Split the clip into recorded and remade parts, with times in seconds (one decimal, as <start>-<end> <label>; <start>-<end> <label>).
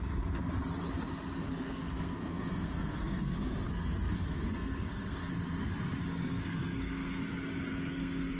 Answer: 0.0-1.5 recorded; 1.5-5.3 remade; 5.3-6.1 recorded; 6.1-7.2 remade; 7.2-7.7 recorded; 7.7-8.4 remade